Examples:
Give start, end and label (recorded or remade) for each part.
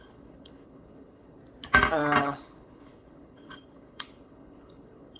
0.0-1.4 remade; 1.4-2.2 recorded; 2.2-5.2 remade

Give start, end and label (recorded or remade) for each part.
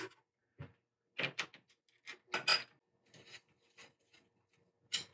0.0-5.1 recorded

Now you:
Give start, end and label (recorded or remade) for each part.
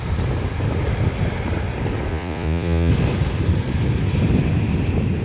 0.0-2.1 recorded; 2.1-2.9 remade; 2.9-5.2 recorded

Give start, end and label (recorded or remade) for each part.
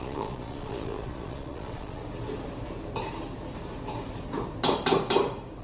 0.0-2.0 remade; 2.0-5.6 recorded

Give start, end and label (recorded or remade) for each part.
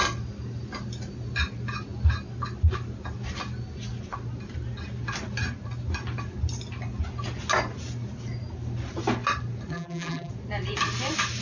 0.0-9.7 recorded; 9.7-10.3 remade; 10.3-11.4 recorded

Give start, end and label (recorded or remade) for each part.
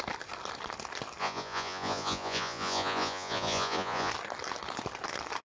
0.0-1.2 recorded; 1.2-4.1 remade; 4.1-5.5 recorded